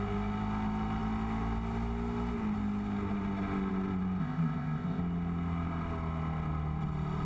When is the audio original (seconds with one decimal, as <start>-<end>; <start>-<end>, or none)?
0.0-4.2; 5.0-7.2